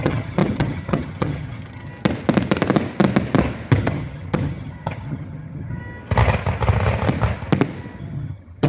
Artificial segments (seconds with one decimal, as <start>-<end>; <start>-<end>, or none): 0.0-1.9; 3.8-5.8; 8.0-8.7